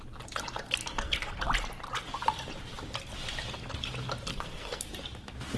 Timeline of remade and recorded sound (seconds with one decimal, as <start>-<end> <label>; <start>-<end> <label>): 0.0-0.8 recorded; 0.8-1.4 remade; 1.4-4.3 recorded; 4.3-4.8 remade; 4.8-5.6 recorded